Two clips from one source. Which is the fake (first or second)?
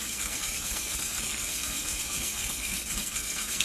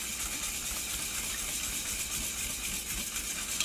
first